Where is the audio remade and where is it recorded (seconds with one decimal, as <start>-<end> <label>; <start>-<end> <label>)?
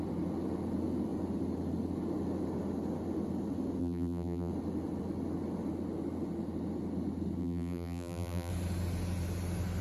0.0-3.8 recorded; 3.8-4.5 remade; 4.5-7.4 recorded; 7.4-8.5 remade; 8.5-9.8 recorded